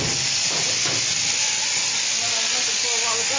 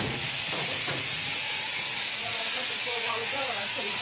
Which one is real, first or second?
first